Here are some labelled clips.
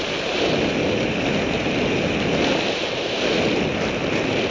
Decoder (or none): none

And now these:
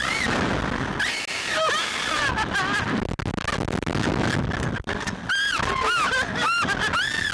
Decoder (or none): none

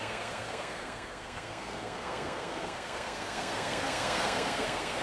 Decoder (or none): codec, SNAC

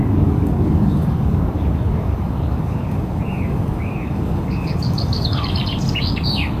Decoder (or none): codec, DAC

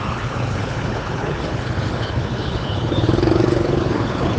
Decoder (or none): codec, HILCodec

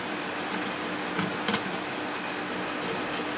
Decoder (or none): none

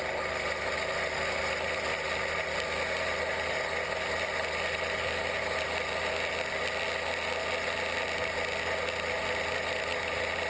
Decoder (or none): none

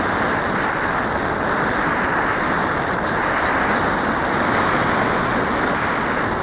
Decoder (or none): none